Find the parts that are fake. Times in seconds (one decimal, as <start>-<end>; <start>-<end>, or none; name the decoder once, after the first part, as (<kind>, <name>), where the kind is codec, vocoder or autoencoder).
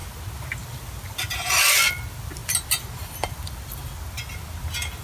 none